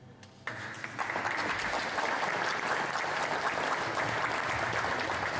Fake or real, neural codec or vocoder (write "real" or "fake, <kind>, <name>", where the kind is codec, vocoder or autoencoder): real